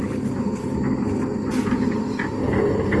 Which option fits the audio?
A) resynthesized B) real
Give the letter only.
B